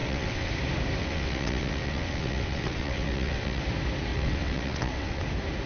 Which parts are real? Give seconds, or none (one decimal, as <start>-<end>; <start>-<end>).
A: 0.5-1.0; 3.6-4.1; 5.2-5.7